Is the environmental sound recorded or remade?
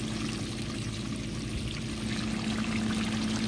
recorded